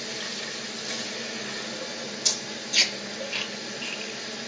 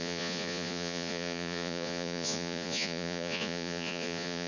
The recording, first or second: first